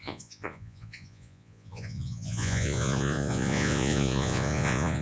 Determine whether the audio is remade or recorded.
remade